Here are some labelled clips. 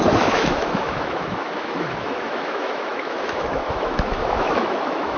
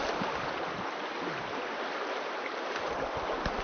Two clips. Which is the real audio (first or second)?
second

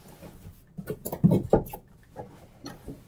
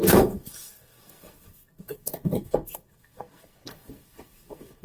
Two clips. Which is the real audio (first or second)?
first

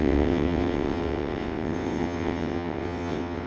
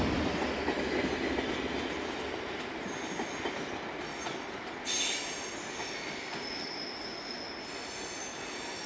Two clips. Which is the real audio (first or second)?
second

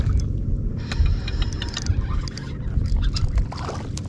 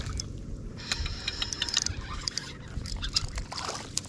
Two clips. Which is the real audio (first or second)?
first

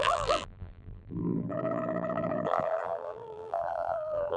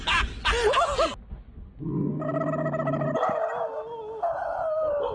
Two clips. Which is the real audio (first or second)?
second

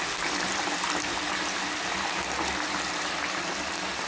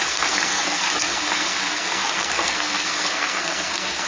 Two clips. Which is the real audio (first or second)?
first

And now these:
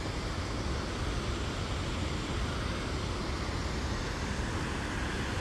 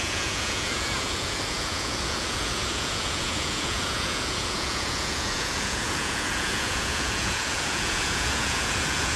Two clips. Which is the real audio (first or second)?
first